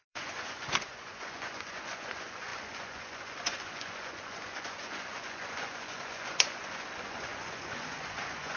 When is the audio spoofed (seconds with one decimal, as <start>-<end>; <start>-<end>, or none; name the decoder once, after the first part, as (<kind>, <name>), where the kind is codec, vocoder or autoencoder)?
0.0-8.6 (vocoder, Vocos)